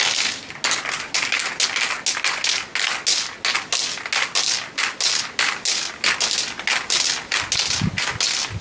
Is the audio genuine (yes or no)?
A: yes